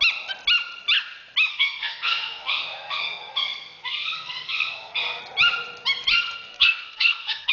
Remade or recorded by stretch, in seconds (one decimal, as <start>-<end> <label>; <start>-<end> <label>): 0.0-1.5 recorded; 1.5-5.2 remade; 5.2-6.1 recorded; 6.1-7.5 remade